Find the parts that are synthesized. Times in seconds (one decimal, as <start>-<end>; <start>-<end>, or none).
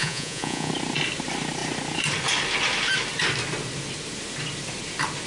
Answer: 0.0-0.7